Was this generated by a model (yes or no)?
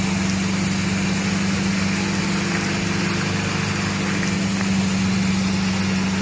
no